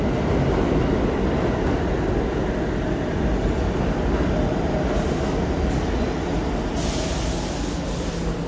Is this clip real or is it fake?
real